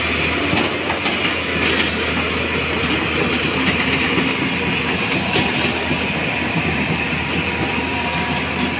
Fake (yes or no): no